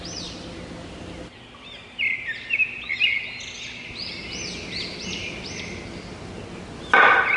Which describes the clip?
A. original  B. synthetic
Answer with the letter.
A